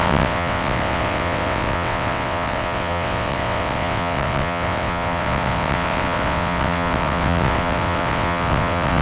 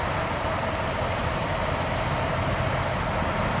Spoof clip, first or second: first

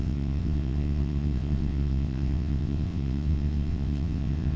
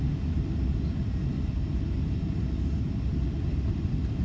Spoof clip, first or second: first